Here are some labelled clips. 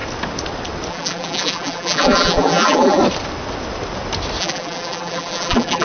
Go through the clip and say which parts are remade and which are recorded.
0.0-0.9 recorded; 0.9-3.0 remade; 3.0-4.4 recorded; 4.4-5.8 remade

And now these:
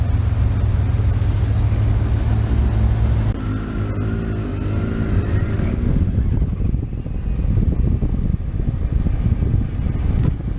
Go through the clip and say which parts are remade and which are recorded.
0.0-5.5 recorded; 5.5-6.1 remade; 6.1-10.6 recorded

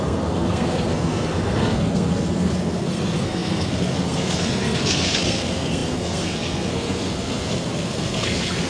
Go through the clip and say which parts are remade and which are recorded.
0.0-8.7 remade

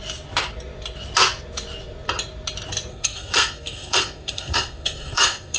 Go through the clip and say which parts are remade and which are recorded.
0.0-2.9 recorded; 2.9-5.6 remade